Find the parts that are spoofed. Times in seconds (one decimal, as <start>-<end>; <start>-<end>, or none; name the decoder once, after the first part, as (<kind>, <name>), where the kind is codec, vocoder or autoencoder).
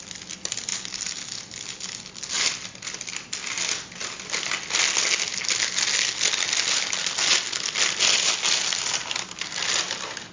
none